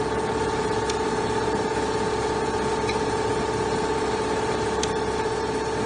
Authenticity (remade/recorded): recorded